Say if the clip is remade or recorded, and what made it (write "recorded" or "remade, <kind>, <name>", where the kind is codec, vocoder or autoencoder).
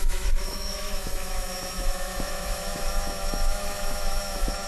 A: remade, autoencoder, DAC-VAE